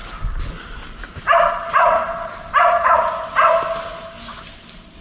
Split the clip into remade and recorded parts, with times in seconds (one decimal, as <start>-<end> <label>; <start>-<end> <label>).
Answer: 0.0-5.0 recorded